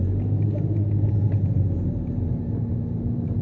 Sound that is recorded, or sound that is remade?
recorded